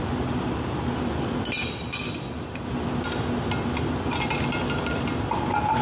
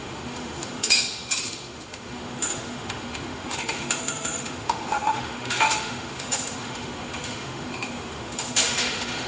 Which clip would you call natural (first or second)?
first